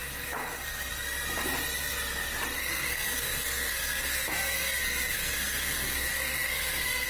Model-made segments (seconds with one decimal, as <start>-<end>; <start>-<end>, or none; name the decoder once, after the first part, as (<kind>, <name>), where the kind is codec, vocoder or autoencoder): 0.0-0.9 (codec, SNAC); 2.6-7.1

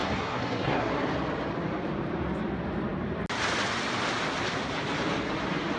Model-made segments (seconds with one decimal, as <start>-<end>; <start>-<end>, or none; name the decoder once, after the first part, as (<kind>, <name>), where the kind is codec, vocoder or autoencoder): 0.0-0.9 (codec, SNAC)

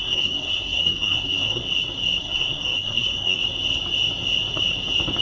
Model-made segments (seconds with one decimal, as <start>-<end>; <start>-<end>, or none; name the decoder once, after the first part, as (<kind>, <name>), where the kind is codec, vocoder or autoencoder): 0.0-1.6 (codec, SNAC); 2.2-3.4